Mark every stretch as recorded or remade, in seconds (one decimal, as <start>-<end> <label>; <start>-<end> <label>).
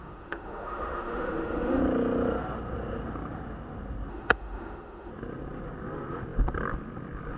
0.0-1.8 remade; 1.8-4.1 recorded; 4.1-5.1 remade; 5.1-7.4 recorded